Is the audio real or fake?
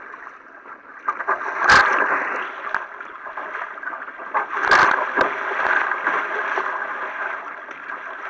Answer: real